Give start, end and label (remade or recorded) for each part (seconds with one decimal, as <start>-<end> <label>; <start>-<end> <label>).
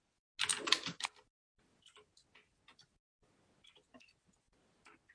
0.0-5.1 recorded